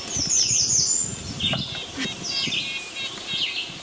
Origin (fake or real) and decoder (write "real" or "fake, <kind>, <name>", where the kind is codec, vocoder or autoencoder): real